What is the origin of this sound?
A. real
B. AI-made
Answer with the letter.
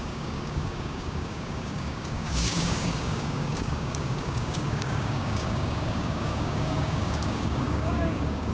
B